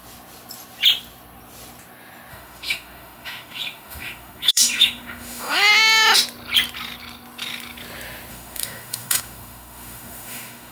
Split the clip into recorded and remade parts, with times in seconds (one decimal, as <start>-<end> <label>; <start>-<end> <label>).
0.0-2.3 recorded; 2.3-5.7 remade; 5.7-8.3 recorded; 8.3-10.7 remade